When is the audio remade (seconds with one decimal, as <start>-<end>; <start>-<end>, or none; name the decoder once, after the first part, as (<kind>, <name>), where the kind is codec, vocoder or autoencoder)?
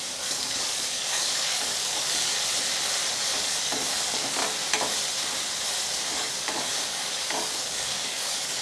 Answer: 0.0-2.3 (codec, DAC); 3.1-4.4; 6.1-8.6